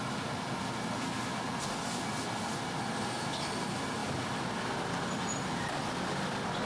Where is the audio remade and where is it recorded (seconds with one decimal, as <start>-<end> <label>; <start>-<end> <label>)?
0.0-6.7 recorded